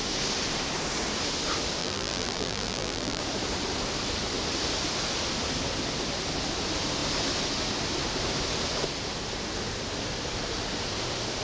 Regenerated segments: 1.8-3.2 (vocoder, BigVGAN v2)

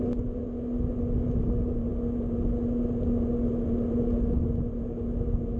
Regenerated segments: none

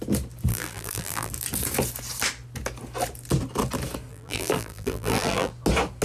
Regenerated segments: 0.5-1.3 (vocoder, BigVGAN v2); 4.1-5.5

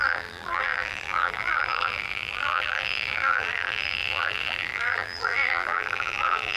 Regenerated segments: 0.0-6.6 (vocoder, BigVGAN v2)

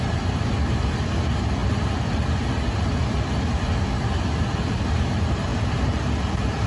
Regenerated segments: 5.5-6.7 (vocoder, BigVGAN v2)

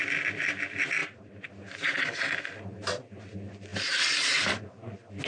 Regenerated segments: 1.0-1.5 (vocoder, BigVGAN v2); 3.7-4.6

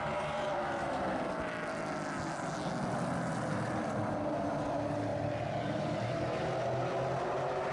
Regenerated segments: none

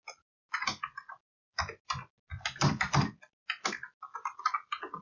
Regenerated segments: none